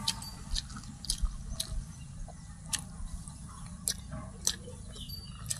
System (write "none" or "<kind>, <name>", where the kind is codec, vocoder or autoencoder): none